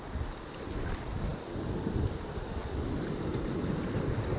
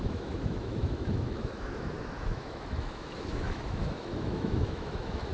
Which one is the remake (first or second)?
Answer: second